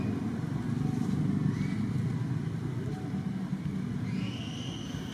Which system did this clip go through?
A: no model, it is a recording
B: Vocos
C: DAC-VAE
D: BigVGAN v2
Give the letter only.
A